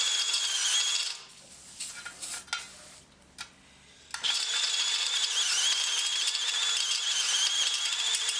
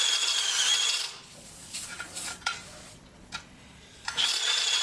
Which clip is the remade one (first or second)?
second